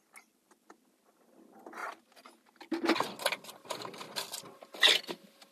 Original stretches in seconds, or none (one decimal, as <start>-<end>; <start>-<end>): 0.0-5.5